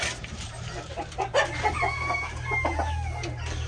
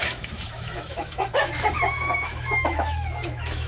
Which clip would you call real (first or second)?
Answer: first